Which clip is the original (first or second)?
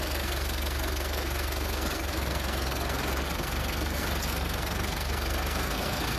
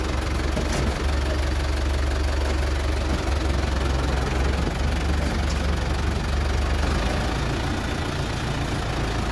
second